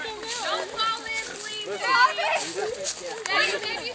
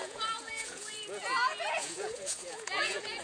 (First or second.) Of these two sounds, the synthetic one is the second